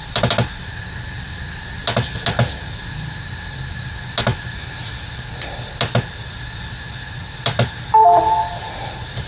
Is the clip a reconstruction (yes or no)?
no